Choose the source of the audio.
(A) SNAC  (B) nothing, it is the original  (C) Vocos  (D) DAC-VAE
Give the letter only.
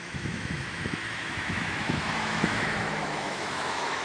D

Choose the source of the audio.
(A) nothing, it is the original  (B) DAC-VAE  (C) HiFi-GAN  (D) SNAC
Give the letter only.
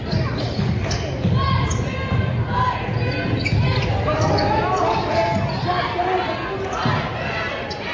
A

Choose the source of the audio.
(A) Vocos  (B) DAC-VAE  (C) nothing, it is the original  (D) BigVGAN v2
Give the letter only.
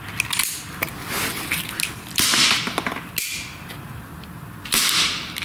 C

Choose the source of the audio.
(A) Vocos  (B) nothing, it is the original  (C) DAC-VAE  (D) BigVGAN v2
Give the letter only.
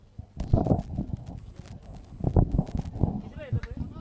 B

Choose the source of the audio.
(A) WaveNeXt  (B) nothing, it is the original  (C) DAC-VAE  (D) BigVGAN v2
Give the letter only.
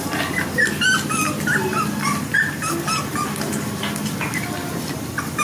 B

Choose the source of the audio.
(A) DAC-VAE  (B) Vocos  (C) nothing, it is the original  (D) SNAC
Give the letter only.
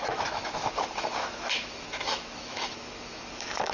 A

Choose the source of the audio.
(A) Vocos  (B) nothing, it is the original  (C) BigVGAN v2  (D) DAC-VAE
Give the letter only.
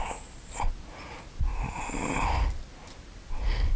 B